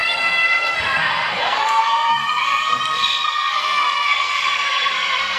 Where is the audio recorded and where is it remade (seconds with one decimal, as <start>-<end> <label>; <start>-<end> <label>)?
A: 0.0-5.4 remade